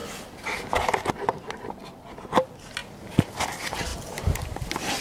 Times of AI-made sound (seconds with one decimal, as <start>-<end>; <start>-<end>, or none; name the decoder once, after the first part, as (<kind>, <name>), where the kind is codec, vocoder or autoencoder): 3.9-4.4 (vocoder, BigVGAN v2)